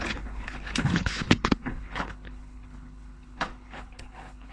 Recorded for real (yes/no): no